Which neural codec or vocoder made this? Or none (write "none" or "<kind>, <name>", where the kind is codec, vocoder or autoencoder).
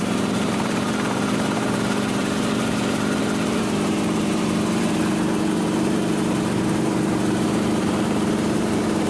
vocoder, BigVGAN v2